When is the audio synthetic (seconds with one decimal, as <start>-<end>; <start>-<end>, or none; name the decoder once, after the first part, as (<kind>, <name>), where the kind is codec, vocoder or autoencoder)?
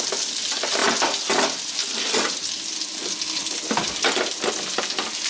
none